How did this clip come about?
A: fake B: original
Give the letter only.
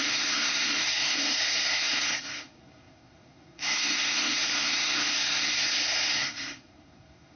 A